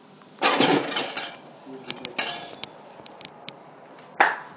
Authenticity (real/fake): real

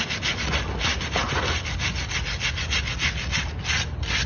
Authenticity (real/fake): real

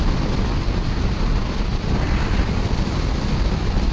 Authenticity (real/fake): real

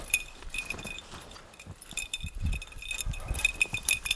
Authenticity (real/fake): fake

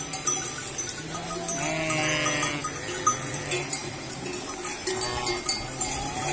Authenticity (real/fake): real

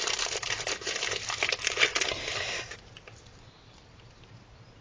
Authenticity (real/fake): fake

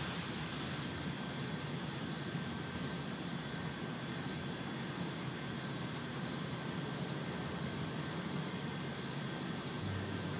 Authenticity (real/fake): real